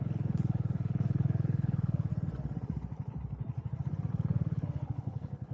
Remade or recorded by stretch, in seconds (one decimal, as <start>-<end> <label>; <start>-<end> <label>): 0.0-2.1 remade; 2.1-4.1 recorded; 4.1-5.5 remade